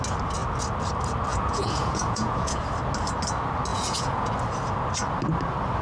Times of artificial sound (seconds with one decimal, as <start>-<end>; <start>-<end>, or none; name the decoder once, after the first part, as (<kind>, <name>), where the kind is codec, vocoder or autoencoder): 1.3-2.6 (vocoder, Vocos); 3.7-4.3